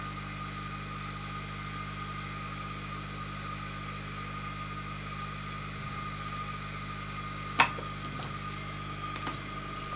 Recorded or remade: recorded